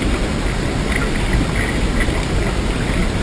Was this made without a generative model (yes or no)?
yes